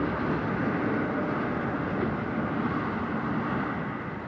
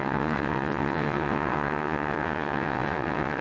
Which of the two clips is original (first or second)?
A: first